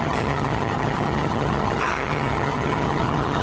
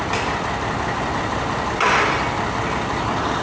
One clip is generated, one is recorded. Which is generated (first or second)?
first